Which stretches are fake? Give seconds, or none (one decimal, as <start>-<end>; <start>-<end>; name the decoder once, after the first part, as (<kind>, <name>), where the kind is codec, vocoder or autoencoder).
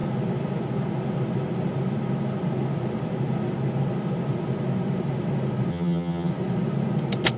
5.7-6.3 (vocoder, HiFi-GAN)